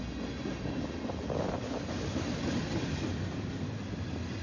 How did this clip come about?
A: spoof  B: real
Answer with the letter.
B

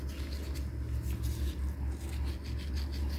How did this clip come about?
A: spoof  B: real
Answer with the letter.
B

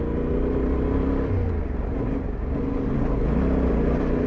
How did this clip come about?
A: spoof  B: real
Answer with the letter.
B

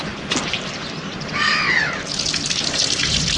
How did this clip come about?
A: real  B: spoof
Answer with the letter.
B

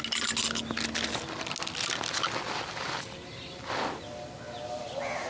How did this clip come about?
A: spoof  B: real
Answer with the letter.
B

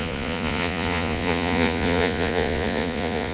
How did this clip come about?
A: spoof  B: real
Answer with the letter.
A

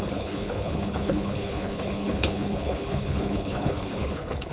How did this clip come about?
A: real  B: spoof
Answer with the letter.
B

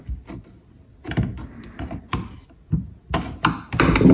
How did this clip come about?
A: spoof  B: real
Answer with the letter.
B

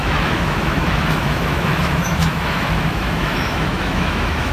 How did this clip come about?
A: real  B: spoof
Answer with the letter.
B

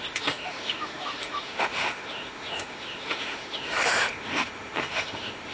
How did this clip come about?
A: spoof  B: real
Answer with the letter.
A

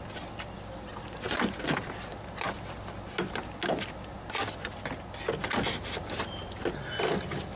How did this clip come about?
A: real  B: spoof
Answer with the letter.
A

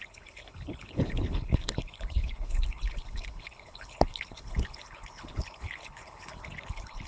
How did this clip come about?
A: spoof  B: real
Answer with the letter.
A